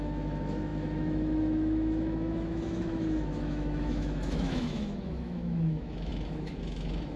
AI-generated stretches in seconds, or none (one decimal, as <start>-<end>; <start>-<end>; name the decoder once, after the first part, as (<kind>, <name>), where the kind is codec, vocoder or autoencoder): 0.0-7.2 (autoencoder, DAC-VAE)